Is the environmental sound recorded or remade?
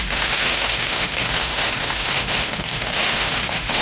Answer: remade